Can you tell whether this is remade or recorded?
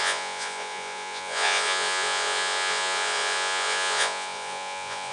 remade